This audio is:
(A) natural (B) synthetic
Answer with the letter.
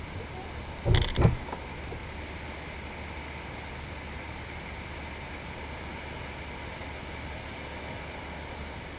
A